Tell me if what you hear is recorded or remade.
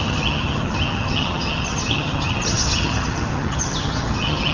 remade